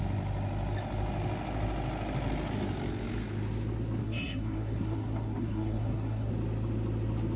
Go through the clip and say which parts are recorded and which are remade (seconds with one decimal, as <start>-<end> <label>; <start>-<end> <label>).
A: 0.0-4.0 recorded; 4.0-6.3 remade; 6.3-7.4 recorded